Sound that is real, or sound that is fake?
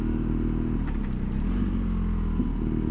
real